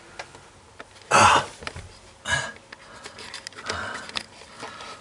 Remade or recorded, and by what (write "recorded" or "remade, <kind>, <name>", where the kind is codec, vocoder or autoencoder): recorded